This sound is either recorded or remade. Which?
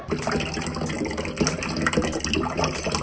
recorded